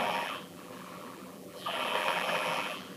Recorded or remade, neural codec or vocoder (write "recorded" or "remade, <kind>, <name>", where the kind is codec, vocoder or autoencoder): remade, vocoder, BigVGAN v2